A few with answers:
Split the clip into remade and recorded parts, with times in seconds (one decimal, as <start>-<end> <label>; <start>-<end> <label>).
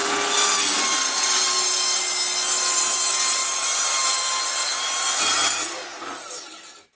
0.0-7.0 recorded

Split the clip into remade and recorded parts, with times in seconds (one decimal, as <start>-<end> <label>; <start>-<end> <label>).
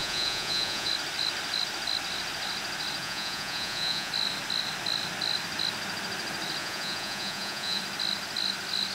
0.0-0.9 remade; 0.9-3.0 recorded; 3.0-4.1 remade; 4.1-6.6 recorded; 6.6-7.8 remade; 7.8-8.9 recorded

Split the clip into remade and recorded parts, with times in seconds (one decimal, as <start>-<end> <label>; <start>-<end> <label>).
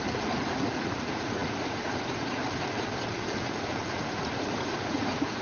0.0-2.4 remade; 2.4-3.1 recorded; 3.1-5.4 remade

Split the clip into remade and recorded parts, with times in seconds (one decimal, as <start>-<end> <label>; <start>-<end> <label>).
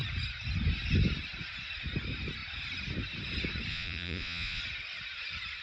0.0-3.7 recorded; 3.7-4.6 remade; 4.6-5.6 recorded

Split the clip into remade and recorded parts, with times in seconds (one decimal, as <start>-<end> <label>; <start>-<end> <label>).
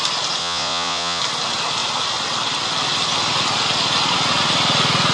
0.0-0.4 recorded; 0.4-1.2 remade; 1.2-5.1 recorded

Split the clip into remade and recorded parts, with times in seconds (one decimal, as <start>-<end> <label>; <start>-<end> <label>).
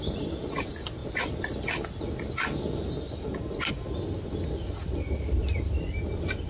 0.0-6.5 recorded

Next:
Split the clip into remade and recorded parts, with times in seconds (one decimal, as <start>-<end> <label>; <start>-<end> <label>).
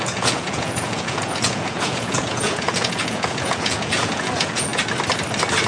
0.0-4.7 remade; 4.7-5.7 recorded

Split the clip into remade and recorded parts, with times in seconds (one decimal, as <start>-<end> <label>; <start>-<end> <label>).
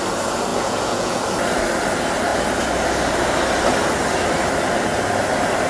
0.0-0.5 recorded; 0.5-1.2 remade; 1.2-5.7 recorded